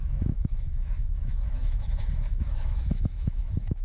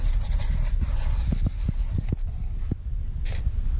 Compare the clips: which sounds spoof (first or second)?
first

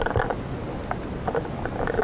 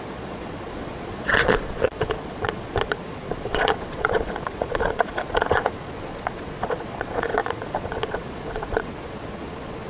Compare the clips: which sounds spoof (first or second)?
second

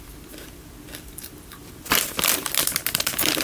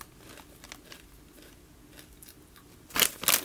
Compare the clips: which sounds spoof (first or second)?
first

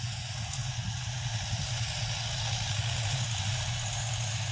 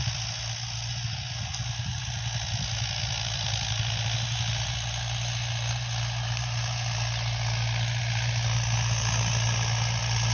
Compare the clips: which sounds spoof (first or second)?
first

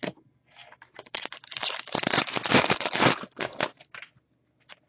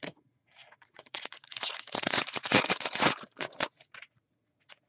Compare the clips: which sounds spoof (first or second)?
second